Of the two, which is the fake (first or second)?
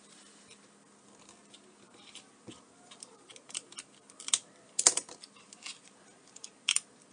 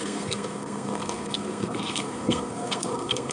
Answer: second